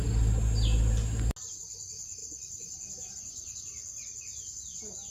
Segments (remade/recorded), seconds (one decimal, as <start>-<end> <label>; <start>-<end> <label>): 0.0-5.1 recorded